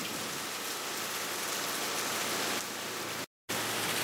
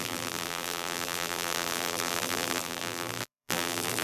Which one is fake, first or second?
second